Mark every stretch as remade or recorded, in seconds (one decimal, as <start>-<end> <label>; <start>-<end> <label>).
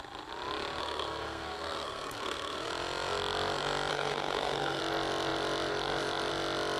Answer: 0.0-0.8 recorded; 0.8-2.7 remade; 2.7-3.9 recorded; 3.9-4.8 remade; 4.8-6.8 recorded